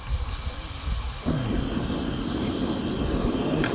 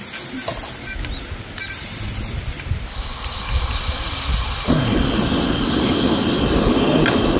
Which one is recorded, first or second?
first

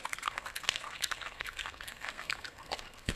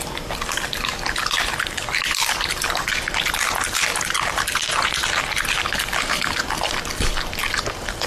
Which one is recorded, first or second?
second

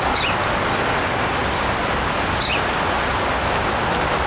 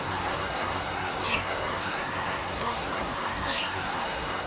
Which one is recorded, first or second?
first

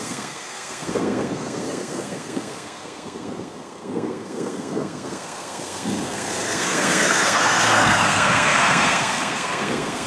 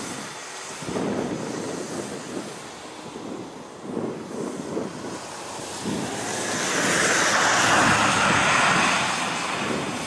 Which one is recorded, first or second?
second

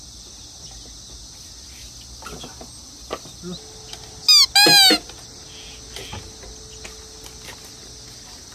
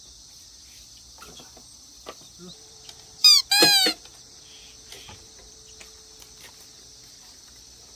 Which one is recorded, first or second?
first